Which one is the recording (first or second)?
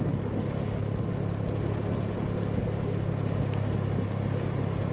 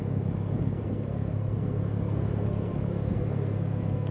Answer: first